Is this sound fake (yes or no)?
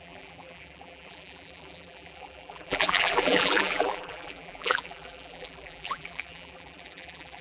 yes